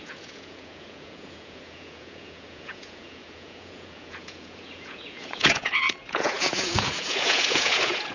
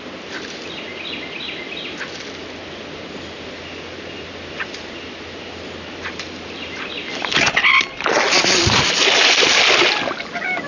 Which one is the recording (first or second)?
second